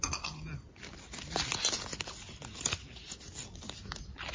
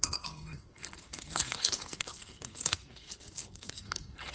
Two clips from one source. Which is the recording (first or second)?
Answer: first